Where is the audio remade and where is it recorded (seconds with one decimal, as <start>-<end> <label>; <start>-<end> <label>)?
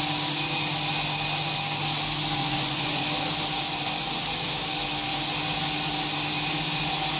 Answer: 0.0-2.4 recorded; 2.4-3.0 remade; 3.0-7.2 recorded